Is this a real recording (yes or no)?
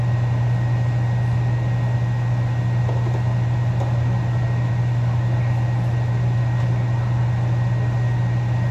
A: yes